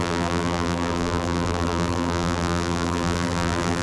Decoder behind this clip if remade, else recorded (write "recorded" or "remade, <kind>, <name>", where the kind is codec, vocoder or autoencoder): remade, vocoder, BigVGAN v2